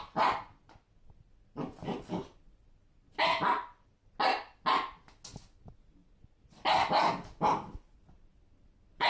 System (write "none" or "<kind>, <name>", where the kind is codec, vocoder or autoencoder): none